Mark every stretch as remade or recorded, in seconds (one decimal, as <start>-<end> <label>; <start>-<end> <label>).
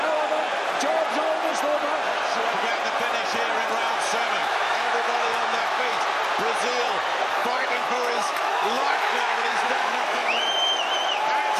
0.0-4.4 recorded; 4.4-6.0 remade; 6.0-7.4 recorded; 7.4-10.5 remade; 10.5-11.6 recorded